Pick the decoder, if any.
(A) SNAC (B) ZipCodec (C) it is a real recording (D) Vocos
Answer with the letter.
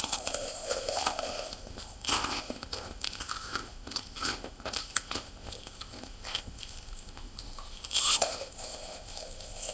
B